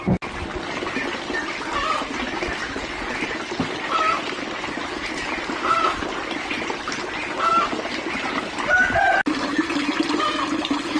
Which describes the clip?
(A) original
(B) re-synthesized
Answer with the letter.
A